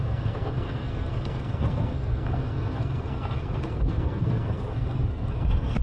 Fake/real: fake